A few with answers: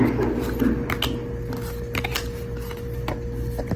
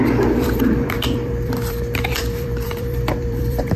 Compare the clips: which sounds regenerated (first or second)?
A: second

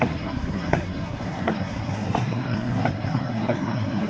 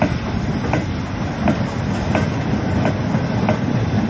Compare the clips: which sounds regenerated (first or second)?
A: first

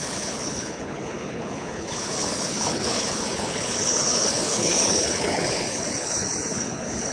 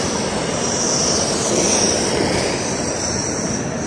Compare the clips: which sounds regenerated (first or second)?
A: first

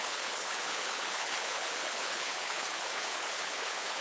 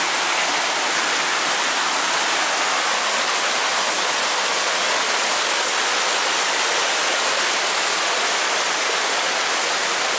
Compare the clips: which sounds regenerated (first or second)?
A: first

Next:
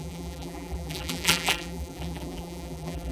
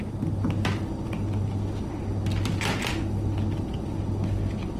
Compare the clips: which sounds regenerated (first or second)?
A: first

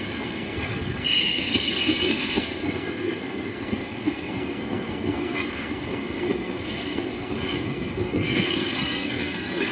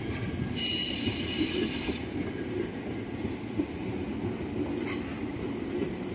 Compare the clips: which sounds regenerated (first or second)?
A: first